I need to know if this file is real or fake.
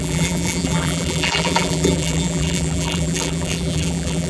fake